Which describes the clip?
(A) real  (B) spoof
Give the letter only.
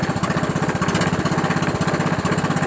A